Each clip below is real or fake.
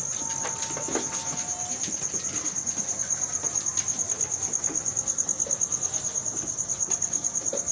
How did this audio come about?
real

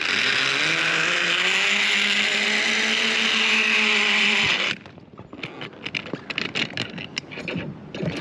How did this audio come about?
real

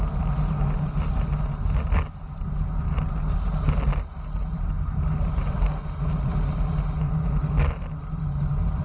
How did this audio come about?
real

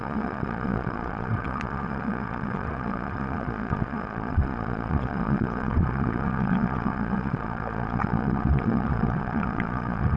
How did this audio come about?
fake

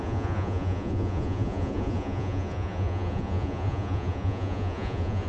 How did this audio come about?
fake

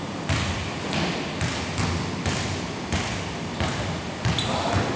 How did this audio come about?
real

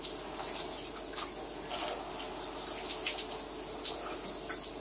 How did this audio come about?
real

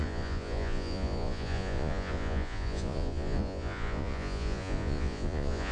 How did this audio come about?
fake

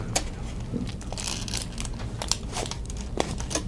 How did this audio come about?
real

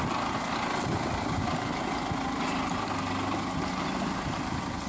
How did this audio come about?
real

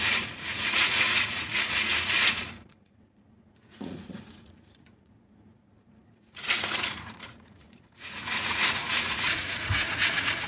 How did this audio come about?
fake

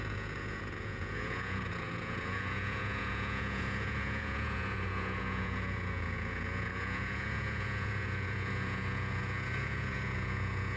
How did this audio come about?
fake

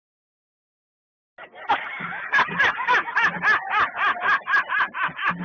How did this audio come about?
real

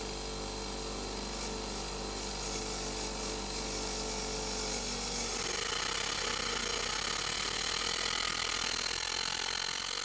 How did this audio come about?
real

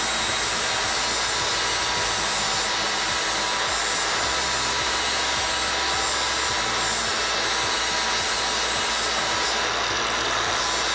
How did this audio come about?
real